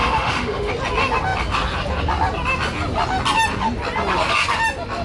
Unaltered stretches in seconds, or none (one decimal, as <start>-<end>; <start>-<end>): 0.7-5.0